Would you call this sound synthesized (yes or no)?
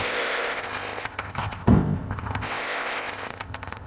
yes